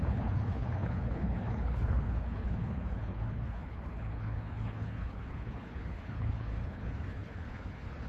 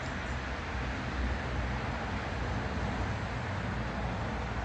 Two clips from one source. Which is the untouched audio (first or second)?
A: second